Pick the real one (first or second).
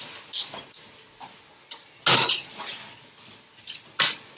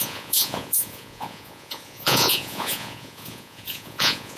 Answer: first